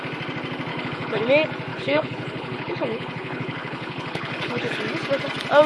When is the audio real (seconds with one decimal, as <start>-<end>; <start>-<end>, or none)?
0.0-0.7; 1.2-1.7; 4.8-5.7